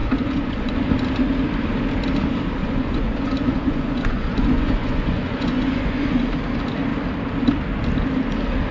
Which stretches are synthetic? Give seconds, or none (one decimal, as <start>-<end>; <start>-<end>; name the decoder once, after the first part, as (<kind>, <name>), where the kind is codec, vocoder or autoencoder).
0.0-0.8 (vocoder, Vocos); 2.6-6.2